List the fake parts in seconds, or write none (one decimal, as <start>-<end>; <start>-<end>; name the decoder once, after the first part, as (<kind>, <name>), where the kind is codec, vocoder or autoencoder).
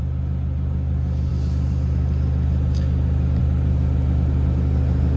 none